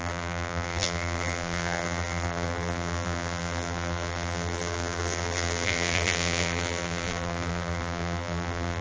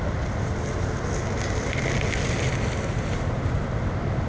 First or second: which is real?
second